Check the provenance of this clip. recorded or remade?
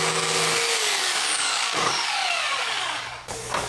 remade